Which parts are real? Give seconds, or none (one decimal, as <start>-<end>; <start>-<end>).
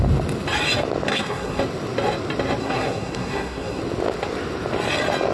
0.0-1.1; 1.6-2.6; 3.8-5.3